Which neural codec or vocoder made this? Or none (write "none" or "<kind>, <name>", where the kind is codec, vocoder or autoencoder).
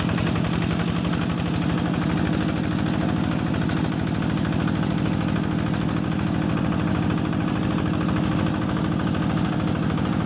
none